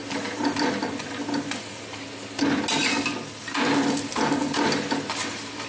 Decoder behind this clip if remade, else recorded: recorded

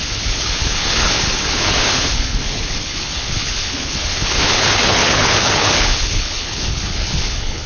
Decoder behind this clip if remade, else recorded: remade, codec, HILCodec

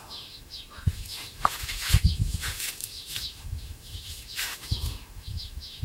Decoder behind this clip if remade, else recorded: remade, autoencoder, DAC-VAE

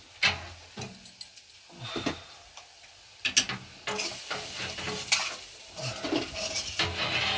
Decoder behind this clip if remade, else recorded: recorded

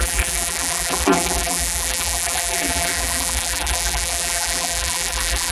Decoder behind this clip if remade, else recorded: remade, vocoder, BigVGAN v2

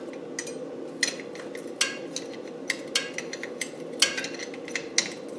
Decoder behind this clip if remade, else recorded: recorded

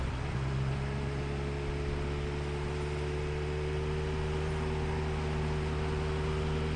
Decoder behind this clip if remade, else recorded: recorded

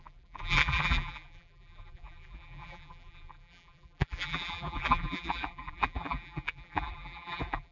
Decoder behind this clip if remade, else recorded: remade, vocoder, BigVGAN v2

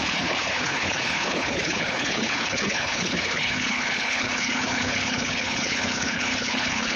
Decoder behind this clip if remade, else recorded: remade, codec, HILCodec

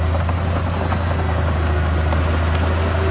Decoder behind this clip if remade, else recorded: recorded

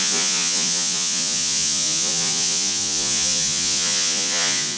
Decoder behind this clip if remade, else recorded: remade, vocoder, Vocos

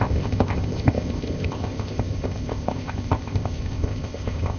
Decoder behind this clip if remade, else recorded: remade, codec, ZipCodec